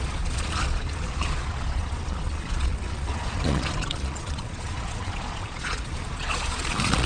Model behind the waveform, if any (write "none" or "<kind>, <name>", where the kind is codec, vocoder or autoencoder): vocoder, Vocos